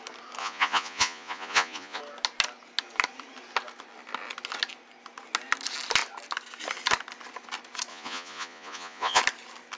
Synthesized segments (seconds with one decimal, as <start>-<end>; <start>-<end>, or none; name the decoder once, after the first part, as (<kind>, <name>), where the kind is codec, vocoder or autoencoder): 0.4-2.0 (vocoder, Vocos); 7.9-9.2